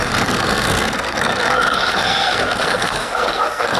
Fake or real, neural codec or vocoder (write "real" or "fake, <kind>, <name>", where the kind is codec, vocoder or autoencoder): fake, codec, SNAC